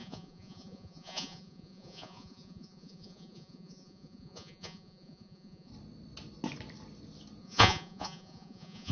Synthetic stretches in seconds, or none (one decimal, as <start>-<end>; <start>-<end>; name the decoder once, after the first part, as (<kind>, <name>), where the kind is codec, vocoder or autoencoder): 0.0-5.7 (vocoder, Vocos); 7.4-8.9